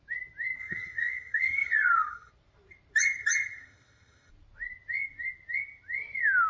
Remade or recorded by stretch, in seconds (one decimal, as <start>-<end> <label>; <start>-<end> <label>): 0.0-0.6 recorded; 0.6-2.3 remade; 2.3-3.0 recorded; 3.0-4.3 remade; 4.3-6.5 recorded